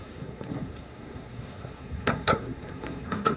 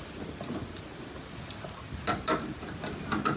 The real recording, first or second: second